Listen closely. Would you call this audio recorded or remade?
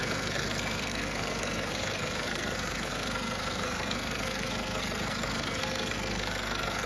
remade